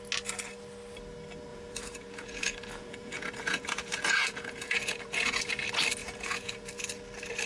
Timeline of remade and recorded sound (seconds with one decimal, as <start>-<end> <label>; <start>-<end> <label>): 0.0-1.5 recorded; 1.5-5.4 remade; 5.4-6.0 recorded; 6.0-6.7 remade; 6.7-7.5 recorded

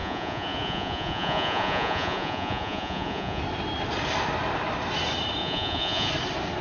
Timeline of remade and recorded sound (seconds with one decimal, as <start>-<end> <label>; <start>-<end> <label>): 0.0-3.4 remade; 3.4-5.4 recorded; 5.4-6.1 remade; 6.1-6.6 recorded

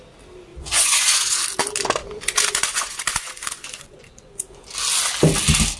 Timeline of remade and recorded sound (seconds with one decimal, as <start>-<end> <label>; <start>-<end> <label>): 0.0-0.5 recorded; 0.5-1.4 remade; 1.4-2.0 recorded; 2.0-4.6 remade; 4.6-5.8 recorded

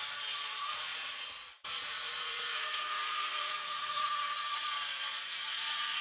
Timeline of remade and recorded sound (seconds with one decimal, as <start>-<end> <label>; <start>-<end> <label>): 0.0-6.0 remade

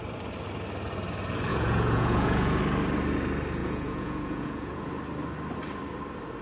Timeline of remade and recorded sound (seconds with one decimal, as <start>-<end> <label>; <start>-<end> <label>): 0.0-1.5 recorded; 1.5-2.6 remade; 2.6-3.6 recorded; 3.6-4.9 remade; 4.9-6.4 recorded

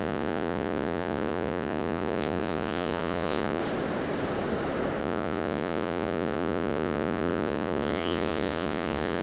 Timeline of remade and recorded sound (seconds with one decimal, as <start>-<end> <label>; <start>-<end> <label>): 0.0-3.6 remade; 3.6-5.0 recorded; 5.0-9.2 remade

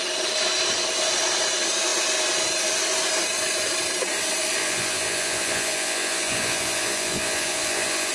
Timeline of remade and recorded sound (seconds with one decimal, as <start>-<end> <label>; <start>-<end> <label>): 0.0-4.6 recorded; 4.6-8.1 remade